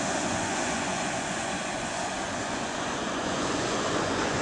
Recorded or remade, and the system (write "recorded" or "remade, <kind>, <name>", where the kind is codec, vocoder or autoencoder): remade, vocoder, Vocos